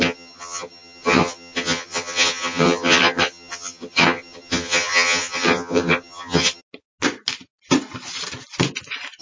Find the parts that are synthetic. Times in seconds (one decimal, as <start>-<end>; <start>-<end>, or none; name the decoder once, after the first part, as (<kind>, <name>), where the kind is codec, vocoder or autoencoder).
0.0-6.6 (vocoder, HiFi-GAN)